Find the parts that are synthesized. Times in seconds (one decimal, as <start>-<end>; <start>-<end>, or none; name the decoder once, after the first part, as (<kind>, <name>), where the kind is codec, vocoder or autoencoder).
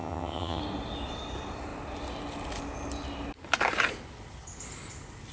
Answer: 0.0-0.6 (vocoder, HiFi-GAN)